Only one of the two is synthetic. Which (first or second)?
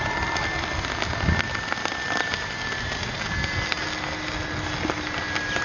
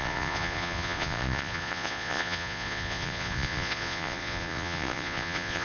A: second